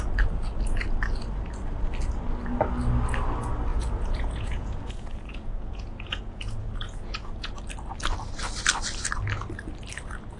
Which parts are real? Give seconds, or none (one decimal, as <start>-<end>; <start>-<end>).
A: 0.0-3.7; 7.6-10.4